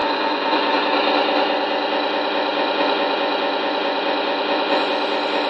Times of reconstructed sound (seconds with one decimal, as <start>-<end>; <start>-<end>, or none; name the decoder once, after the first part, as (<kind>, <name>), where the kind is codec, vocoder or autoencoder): 0.0-0.8 (vocoder, Vocos); 2.5-4.9